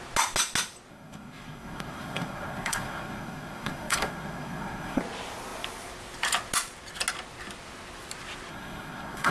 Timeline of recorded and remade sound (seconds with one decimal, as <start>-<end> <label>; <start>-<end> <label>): 0.0-0.9 recorded; 0.9-5.0 remade; 5.0-8.5 recorded; 8.5-9.3 remade